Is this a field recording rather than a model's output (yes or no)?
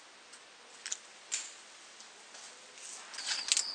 yes